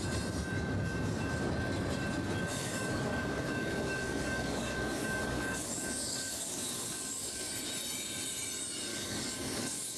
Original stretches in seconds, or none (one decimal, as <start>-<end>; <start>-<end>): 0.0-2.5; 7.5-8.9